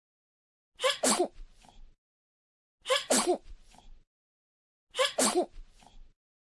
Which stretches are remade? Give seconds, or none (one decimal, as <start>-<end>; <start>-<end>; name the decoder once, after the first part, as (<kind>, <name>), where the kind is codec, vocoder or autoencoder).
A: 3.0-3.8 (vocoder, BigVGAN v2)